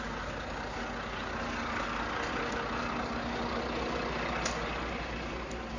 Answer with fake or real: real